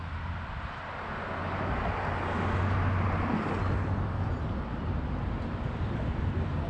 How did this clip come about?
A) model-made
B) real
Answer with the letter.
B